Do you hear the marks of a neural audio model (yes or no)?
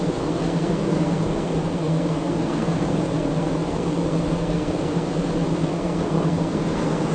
yes